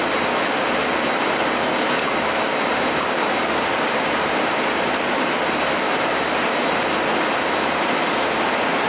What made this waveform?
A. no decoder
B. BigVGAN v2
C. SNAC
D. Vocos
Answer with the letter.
A